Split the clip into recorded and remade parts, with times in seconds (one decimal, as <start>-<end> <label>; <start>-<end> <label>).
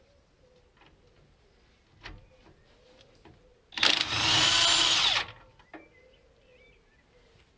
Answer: 0.0-7.6 recorded